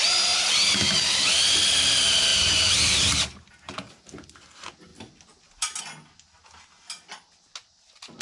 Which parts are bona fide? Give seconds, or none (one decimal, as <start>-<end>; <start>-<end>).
0.0-2.3; 3.9-8.2